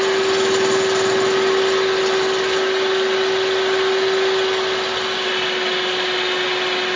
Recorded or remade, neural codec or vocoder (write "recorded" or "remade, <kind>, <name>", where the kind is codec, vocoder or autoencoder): recorded